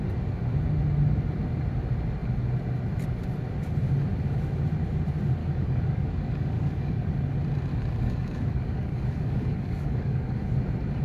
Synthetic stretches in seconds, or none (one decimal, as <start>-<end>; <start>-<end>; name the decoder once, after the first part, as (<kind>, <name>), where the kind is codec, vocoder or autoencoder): 5.4-7.1 (codec, DAC); 7.7-10.6